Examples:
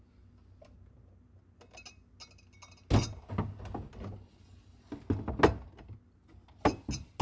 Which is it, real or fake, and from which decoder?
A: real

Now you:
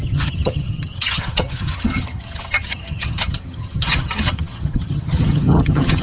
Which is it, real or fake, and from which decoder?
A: fake, vocoder, HiFi-GAN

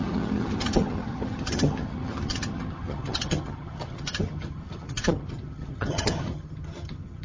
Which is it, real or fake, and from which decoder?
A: fake, vocoder, HiFi-GAN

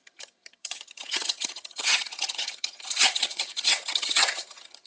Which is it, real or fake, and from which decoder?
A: fake, vocoder, HiFi-GAN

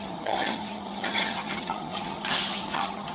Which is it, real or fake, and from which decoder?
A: fake, vocoder, HiFi-GAN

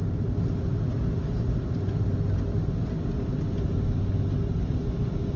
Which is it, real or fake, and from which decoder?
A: real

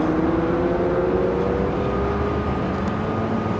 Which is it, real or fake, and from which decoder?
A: real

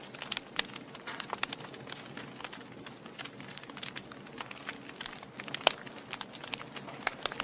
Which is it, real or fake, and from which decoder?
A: real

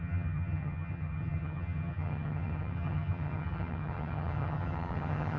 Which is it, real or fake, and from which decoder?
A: fake, vocoder, HiFi-GAN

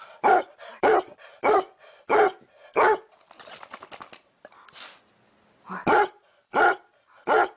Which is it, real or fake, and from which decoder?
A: real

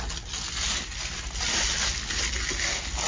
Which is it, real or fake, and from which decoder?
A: real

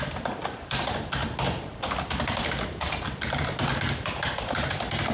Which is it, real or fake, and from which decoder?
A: real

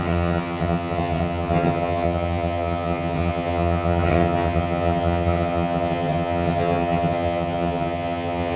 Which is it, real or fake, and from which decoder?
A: fake, vocoder, HiFi-GAN